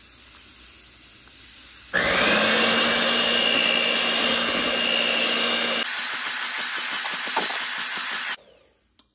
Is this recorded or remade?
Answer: recorded